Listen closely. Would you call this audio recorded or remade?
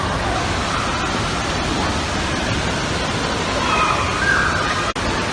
recorded